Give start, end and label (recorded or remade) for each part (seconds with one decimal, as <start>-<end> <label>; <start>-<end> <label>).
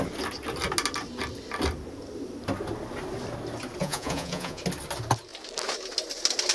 0.0-3.8 recorded; 3.8-4.6 remade; 4.6-6.5 recorded